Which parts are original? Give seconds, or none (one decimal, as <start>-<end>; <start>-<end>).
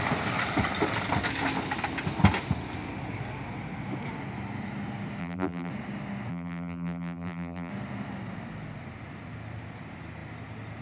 0.0-5.2; 5.7-6.3; 7.7-10.8